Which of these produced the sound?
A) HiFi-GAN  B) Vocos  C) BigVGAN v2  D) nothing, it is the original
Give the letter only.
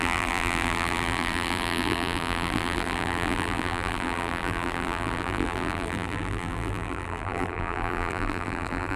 C